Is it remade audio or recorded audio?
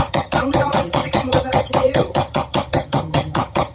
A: remade